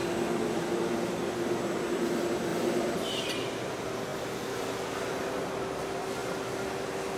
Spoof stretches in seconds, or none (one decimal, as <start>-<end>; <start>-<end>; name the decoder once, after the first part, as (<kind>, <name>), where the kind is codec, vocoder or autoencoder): 2.5-3.3 (vocoder, BigVGAN v2)